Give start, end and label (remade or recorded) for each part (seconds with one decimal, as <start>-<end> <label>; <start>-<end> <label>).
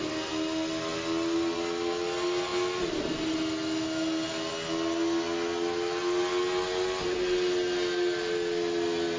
0.0-9.2 recorded